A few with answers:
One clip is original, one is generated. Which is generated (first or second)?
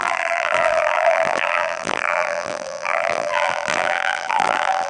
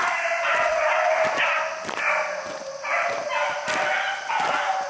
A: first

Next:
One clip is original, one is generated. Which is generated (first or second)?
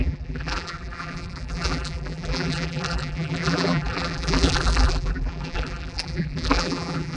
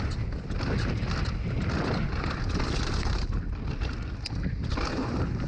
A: first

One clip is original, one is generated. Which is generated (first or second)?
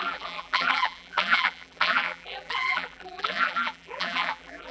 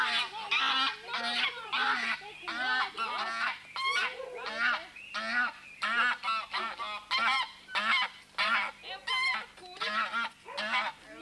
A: first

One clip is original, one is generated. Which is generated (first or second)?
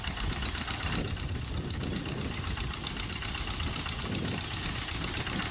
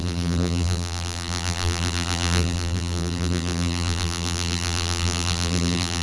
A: second